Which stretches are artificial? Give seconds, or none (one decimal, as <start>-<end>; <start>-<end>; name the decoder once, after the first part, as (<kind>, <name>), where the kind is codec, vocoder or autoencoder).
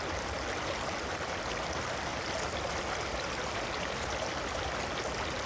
2.1-4.4 (vocoder, BigVGAN v2)